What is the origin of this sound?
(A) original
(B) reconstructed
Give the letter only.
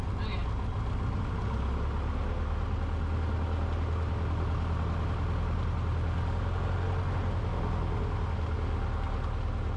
A